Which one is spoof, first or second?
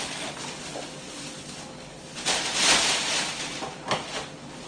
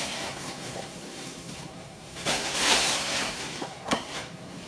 second